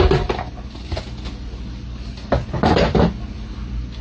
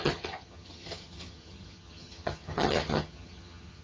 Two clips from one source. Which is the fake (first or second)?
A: second